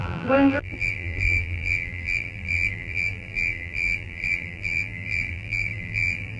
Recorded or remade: remade